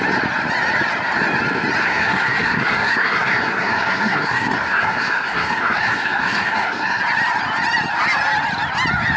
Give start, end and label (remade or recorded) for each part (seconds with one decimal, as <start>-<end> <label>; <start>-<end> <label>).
0.0-1.8 recorded; 1.8-7.0 remade; 7.0-9.2 recorded